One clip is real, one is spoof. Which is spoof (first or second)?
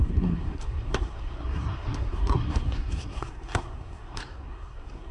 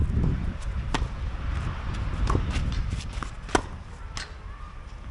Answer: first